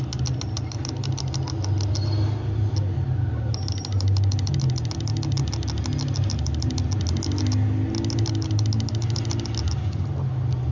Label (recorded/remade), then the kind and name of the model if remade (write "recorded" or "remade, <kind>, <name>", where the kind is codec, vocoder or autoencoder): recorded